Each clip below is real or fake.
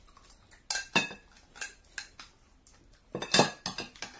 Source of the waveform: real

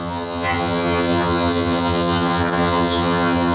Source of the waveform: fake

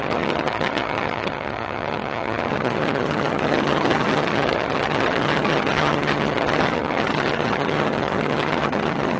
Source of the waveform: fake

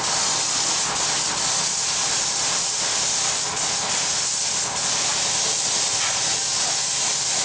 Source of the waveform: real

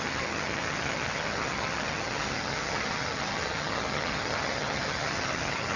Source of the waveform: fake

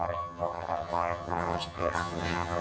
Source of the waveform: fake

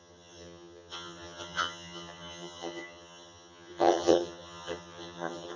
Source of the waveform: fake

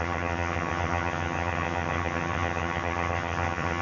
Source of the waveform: fake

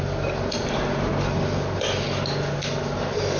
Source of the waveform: real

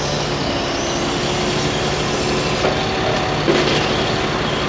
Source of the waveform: real